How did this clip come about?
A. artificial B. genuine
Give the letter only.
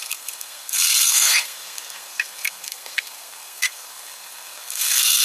A